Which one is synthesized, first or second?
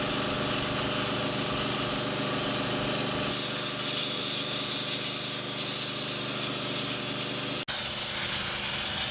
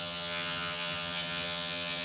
second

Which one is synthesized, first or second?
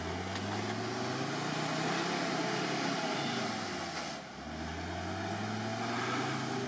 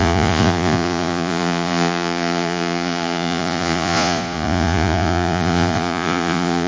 second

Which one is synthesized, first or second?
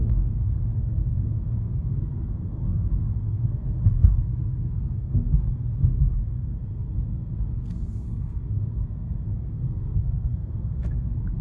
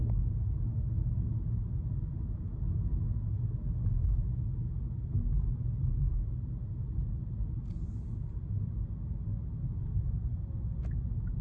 first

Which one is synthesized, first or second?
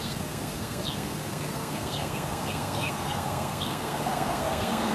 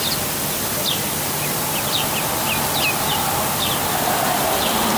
first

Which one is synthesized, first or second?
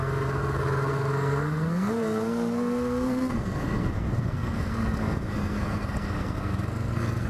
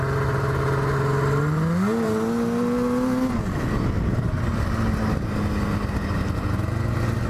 first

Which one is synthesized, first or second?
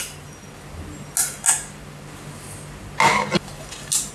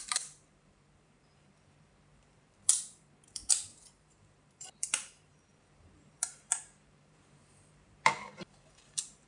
second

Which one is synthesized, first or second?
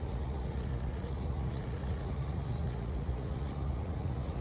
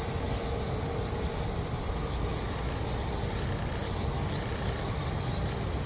first